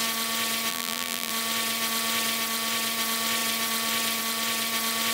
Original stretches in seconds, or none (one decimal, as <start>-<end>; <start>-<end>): 0.0-0.7; 1.3-5.1